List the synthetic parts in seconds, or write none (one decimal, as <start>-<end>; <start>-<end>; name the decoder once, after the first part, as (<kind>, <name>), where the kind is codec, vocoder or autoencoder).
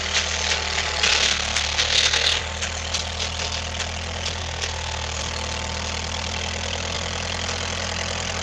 1.1-2.4 (codec, SNAC); 4.4-5.2